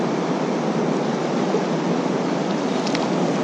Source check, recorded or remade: remade